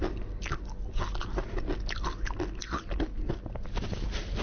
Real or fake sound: real